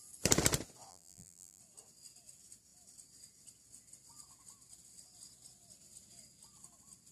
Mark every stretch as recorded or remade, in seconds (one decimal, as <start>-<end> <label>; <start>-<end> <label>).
0.0-0.9 recorded; 0.9-1.6 remade; 1.6-7.1 recorded